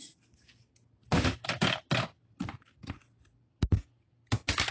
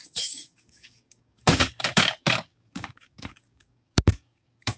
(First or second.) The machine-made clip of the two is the second